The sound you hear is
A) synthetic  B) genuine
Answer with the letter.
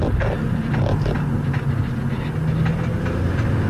B